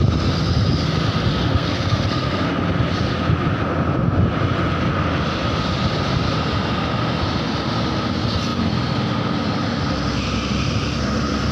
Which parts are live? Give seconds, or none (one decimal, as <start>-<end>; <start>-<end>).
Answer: 0.0-1.3; 2.5-11.5